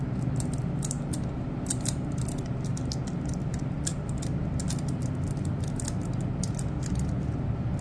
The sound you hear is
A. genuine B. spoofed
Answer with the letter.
A